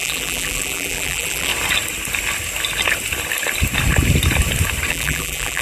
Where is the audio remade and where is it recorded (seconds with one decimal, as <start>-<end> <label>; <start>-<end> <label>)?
0.0-1.5 remade; 1.5-4.9 recorded; 4.9-5.6 remade